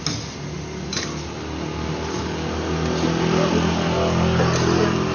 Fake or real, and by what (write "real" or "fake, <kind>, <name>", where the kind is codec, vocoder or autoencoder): real